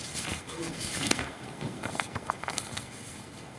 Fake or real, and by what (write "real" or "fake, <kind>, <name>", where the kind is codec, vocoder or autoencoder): fake, codec, SNAC